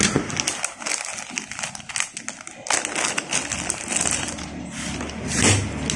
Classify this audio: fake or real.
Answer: real